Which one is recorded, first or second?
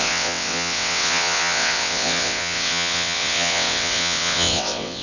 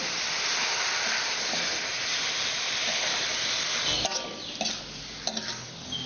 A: second